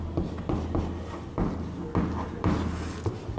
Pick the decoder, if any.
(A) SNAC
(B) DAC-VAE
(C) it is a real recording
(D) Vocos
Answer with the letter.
C